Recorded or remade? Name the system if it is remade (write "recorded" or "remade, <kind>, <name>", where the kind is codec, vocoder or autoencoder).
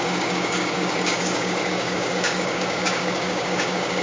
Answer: remade, codec, DAC